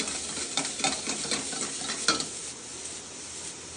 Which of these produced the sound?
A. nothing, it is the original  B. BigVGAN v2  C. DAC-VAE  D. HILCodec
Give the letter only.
A